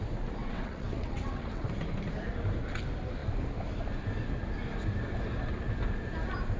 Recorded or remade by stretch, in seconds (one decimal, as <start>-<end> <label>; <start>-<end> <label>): 0.0-0.4 recorded; 0.4-1.7 remade; 1.7-6.6 recorded